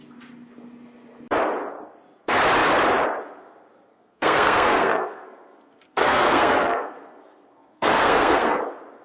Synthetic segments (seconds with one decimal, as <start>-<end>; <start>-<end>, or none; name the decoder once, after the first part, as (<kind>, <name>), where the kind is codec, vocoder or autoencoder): 3.9-8.6 (codec, SNAC)